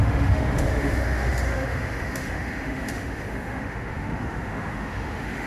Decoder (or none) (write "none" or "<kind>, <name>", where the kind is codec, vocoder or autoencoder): autoencoder, DAC-VAE